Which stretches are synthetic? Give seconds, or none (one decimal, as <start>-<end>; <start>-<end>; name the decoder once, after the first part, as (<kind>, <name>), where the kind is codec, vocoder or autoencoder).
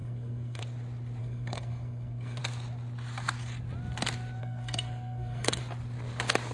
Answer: 0.0-0.6 (codec, SNAC); 1.2-2.4; 4.4-5.6